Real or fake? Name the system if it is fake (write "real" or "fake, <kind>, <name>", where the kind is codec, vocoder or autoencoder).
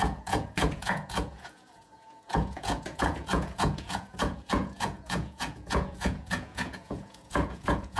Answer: fake, vocoder, Vocos